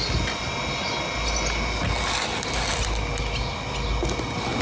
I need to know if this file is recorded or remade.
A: recorded